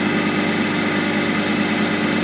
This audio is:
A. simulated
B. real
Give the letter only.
B